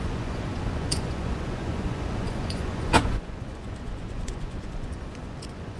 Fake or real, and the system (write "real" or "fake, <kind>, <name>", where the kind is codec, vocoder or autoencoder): fake, vocoder, Vocos